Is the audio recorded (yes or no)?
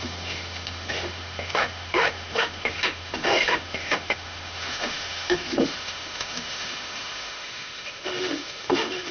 no